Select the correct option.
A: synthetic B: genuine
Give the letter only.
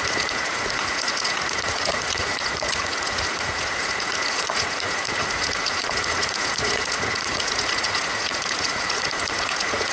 A